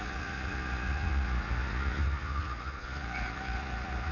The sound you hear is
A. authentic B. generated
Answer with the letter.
B